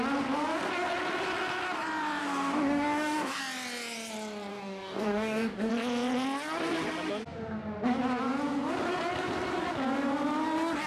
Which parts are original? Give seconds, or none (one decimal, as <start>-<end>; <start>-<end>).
0.0-2.2; 3.4-4.5; 5.7-10.9